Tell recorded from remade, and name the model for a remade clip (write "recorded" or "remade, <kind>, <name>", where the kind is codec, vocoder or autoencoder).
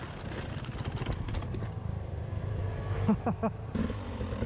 recorded